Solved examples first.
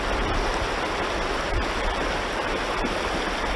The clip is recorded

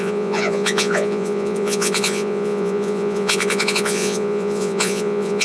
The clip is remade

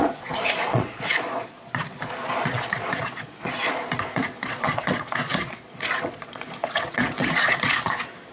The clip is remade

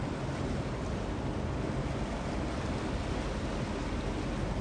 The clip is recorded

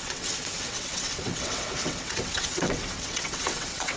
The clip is remade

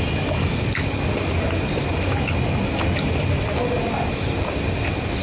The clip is recorded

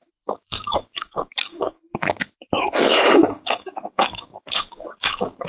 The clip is remade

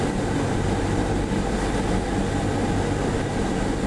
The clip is recorded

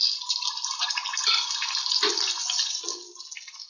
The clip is recorded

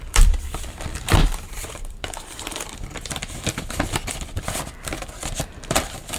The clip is remade